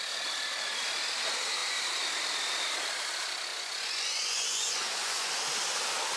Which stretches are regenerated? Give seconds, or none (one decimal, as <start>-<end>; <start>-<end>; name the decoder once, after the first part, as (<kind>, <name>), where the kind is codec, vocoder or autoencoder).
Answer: 3.5-5.3 (vocoder, Vocos)